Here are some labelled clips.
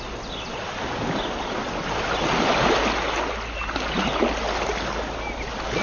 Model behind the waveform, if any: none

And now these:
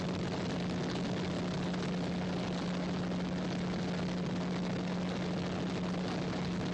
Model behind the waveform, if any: none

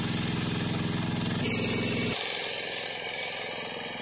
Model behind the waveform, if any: none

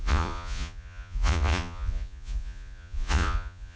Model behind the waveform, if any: vocoder, Vocos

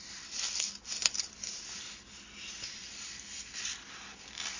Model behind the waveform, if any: none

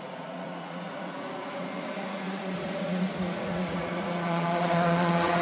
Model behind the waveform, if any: vocoder, Vocos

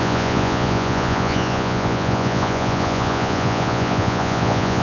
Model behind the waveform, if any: vocoder, Vocos